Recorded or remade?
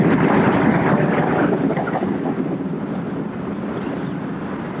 recorded